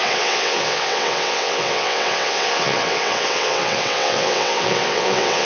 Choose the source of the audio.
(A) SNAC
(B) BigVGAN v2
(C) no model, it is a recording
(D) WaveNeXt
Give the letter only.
D